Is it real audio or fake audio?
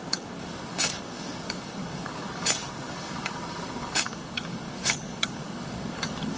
fake